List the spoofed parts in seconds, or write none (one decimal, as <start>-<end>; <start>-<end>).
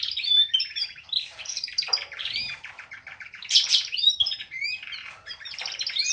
0.0-6.1